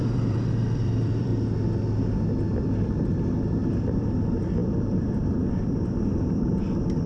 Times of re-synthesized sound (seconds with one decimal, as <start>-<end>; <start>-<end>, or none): 0.0-1.3; 2.6-7.1